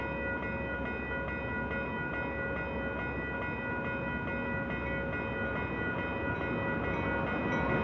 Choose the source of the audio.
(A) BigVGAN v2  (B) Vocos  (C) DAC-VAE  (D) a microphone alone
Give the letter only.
D